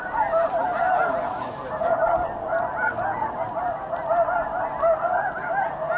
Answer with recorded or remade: recorded